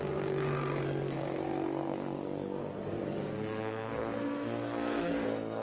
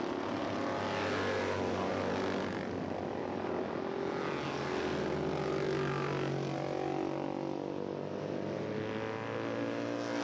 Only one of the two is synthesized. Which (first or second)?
first